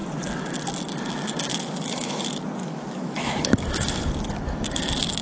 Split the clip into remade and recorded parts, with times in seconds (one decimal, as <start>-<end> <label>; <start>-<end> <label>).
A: 0.0-1.5 recorded; 1.5-2.2 remade; 2.2-2.6 recorded; 2.6-4.0 remade; 4.0-5.2 recorded